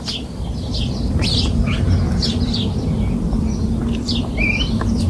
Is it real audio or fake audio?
real